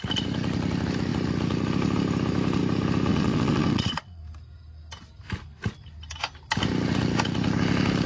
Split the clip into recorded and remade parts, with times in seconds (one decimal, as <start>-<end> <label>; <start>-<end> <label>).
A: 0.0-3.1 recorded; 3.1-4.2 remade; 4.2-8.1 recorded